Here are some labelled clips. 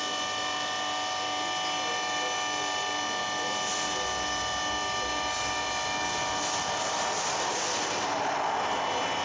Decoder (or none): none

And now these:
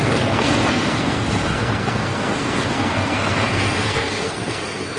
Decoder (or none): codec, SNAC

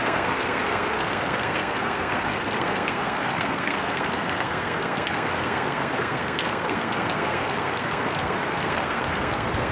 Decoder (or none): codec, SNAC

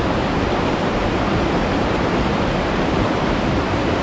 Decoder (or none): none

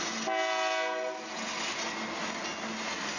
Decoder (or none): none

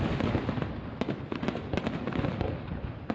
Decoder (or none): none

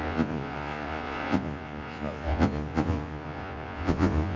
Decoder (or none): vocoder, Vocos